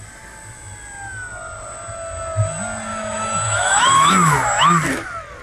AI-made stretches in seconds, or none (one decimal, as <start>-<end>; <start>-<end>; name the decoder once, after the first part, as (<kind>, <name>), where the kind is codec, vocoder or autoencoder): 2.9-4.1 (autoencoder, DAC-VAE)